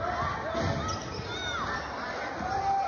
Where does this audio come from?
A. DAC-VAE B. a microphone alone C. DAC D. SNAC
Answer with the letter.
B